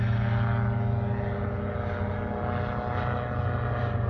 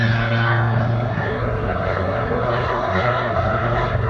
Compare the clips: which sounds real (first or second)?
first